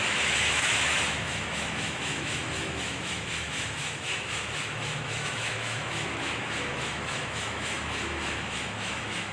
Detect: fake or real fake